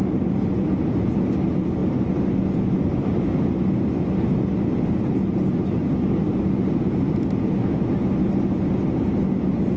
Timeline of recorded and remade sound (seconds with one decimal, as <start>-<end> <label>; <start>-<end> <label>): 0.0-9.8 recorded